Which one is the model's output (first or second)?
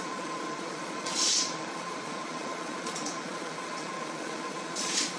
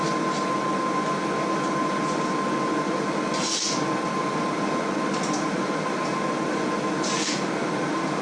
first